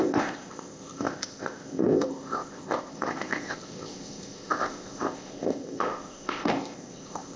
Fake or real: fake